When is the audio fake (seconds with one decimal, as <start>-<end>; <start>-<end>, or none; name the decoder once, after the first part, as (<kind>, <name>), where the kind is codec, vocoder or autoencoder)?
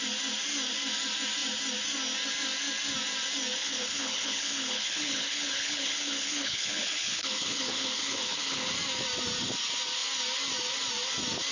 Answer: 3.6-8.7 (codec, HILCodec)